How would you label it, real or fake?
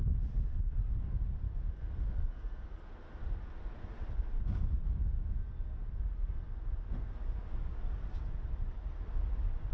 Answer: real